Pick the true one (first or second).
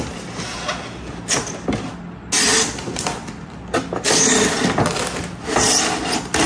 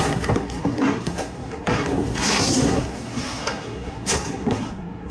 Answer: first